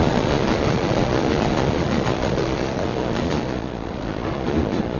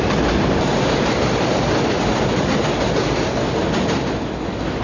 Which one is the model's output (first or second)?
first